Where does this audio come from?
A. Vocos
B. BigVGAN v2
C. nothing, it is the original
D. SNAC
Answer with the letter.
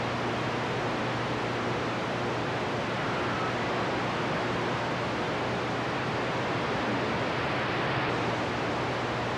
C